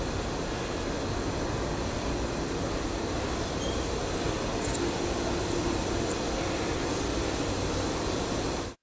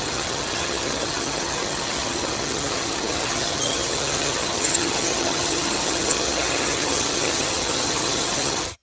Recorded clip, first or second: first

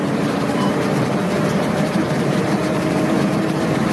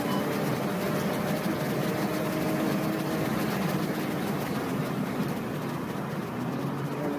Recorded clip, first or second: second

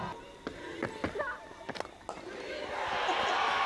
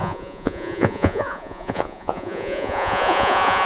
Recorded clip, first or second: first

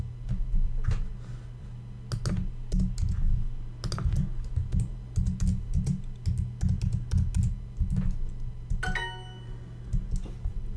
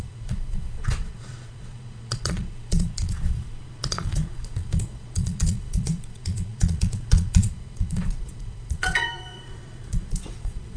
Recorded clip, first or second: first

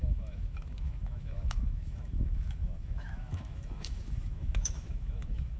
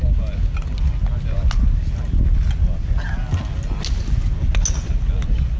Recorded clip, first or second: second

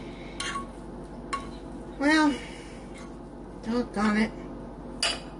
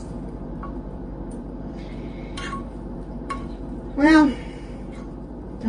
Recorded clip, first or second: first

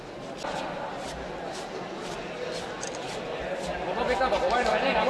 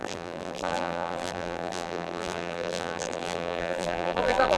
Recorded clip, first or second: first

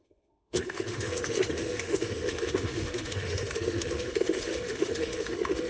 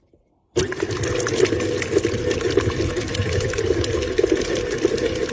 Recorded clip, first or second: second